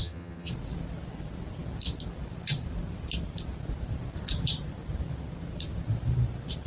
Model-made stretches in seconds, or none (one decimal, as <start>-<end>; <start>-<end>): 0.0-0.5